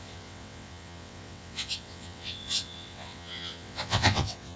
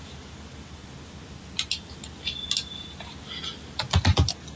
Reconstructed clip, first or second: first